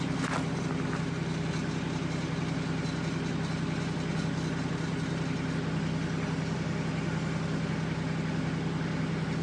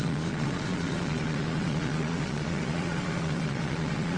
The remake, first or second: second